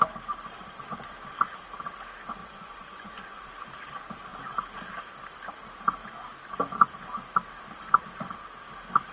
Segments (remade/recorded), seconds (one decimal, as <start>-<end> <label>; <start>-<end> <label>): 0.0-2.4 recorded; 2.4-3.5 remade; 3.5-9.1 recorded